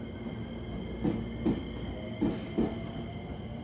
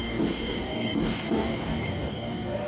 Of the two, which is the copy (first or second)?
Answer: second